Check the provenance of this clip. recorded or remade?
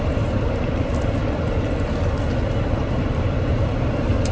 remade